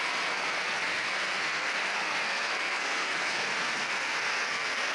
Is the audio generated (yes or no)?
yes